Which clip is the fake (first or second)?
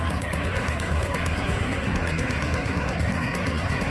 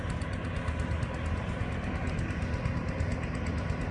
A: first